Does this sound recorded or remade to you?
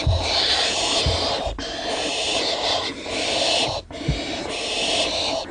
recorded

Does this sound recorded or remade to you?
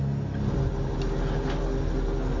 recorded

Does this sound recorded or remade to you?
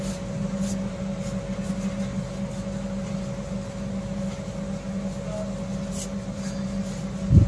recorded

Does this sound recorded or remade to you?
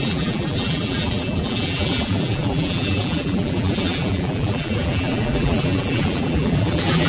remade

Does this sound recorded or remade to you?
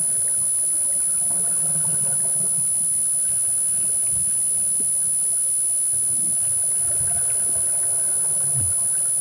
recorded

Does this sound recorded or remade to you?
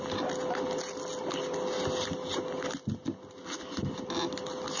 recorded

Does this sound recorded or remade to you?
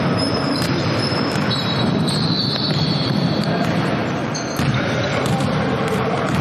remade